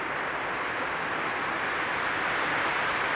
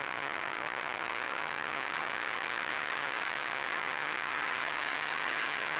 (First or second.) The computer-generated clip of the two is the second